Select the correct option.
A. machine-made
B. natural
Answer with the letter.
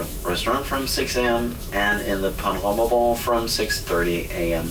A